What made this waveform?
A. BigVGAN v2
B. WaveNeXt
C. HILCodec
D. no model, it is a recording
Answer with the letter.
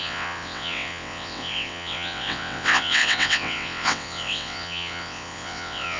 B